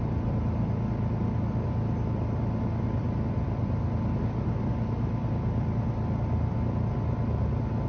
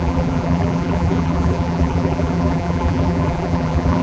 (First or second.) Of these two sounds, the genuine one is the first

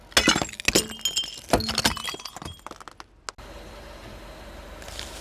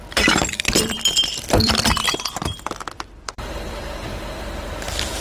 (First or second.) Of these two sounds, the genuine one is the first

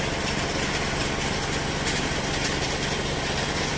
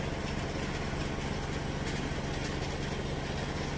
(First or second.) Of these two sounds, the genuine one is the second